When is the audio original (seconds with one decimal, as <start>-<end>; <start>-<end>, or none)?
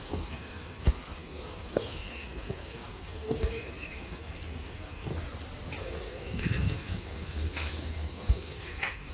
5.1-5.8